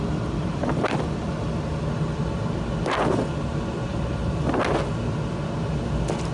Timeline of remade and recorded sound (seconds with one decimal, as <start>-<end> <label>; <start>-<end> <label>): 0.0-0.4 recorded; 0.4-2.7 remade; 2.7-3.9 recorded; 3.9-4.5 remade; 4.5-6.3 recorded